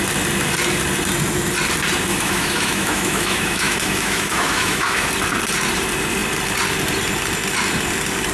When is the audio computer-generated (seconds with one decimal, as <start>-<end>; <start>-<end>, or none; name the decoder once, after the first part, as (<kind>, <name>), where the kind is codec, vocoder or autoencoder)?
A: 2.1-5.1 (autoencoder, DAC-VAE)

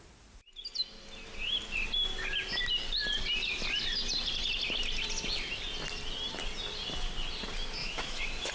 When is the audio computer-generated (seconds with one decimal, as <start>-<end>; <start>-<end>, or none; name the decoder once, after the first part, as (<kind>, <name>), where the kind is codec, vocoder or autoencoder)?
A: 7.8-8.5 (autoencoder, DAC-VAE)